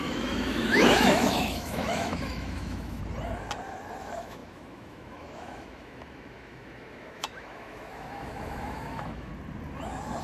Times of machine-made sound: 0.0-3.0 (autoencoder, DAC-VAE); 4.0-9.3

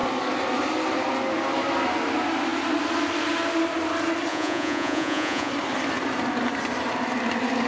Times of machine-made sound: 4.3-5.5 (vocoder, Vocos)

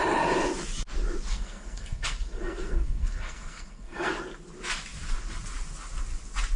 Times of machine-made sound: 1.3-4.1 (codec, SNAC)

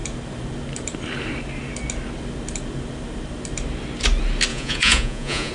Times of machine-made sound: 4.5-5.5 (vocoder, Vocos)

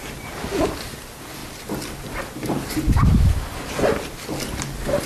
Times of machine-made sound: 0.0-0.7 (vocoder, BigVGAN v2)